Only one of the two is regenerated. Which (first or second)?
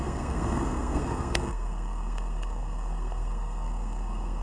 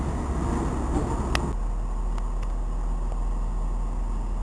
first